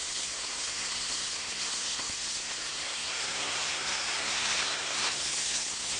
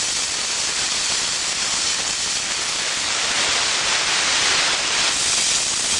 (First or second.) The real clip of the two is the second